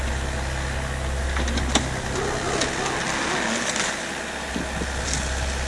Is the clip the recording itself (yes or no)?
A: yes